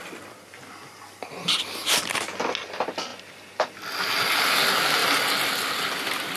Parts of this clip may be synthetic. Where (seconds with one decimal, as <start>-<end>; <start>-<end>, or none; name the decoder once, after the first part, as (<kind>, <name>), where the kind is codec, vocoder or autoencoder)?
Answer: none